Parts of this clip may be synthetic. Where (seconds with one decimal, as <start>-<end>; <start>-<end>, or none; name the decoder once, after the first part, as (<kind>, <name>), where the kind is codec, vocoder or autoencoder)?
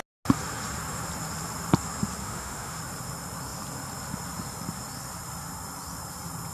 2.2-2.8 (autoencoder, DAC-VAE)